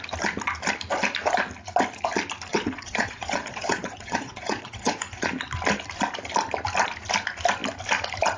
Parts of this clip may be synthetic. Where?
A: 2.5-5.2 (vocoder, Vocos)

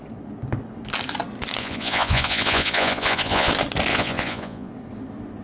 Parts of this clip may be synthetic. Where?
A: 1.6-3.5 (vocoder, Vocos); 3.9-4.7

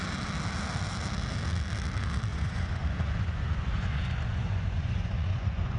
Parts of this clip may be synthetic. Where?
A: 2.3-5.8 (vocoder, Vocos)